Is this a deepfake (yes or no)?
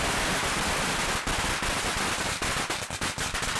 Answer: no